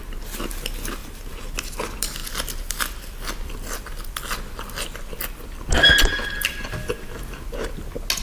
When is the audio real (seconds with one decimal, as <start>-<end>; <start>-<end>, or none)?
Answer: 0.0-1.0; 1.5-8.2